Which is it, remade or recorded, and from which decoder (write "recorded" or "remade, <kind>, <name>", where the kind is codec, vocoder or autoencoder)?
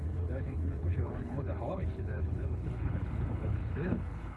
remade, codec, HILCodec